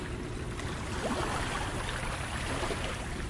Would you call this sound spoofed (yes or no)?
yes